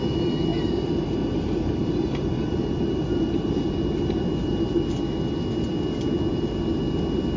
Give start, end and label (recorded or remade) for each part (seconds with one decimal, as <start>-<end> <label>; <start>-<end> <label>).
0.0-0.5 recorded; 0.5-4.9 remade; 4.9-6.3 recorded; 6.3-6.8 remade; 6.8-7.4 recorded